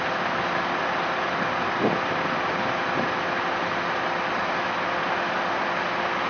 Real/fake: real